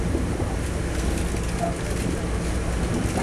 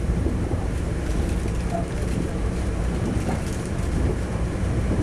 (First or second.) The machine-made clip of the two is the second